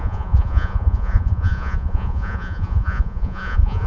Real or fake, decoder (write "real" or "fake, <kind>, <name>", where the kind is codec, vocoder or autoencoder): fake, vocoder, Vocos